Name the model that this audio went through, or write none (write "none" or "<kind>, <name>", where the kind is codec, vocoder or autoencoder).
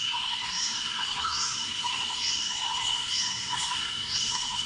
codec, SNAC